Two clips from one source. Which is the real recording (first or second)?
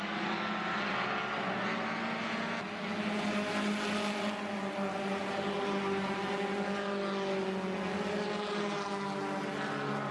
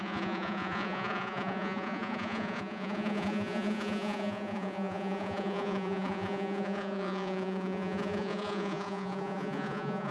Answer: first